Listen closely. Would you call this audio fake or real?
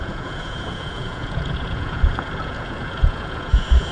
fake